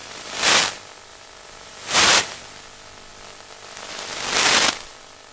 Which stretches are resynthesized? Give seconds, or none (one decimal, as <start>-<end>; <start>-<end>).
1.1-2.4